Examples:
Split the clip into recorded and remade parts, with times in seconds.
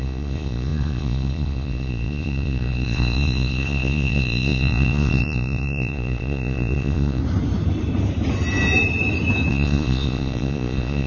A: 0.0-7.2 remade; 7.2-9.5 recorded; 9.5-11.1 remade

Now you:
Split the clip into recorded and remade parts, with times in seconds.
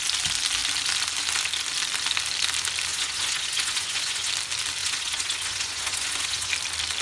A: 0.0-2.9 recorded; 2.9-4.3 remade; 4.3-4.8 recorded; 4.8-6.5 remade; 6.5-7.0 recorded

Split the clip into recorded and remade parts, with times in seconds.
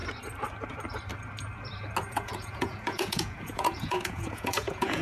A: 0.0-2.1 recorded; 2.1-5.0 remade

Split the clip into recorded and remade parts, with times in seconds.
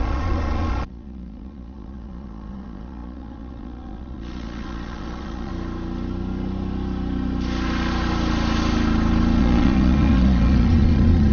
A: 0.0-5.5 remade; 5.5-9.4 recorded; 9.4-11.3 remade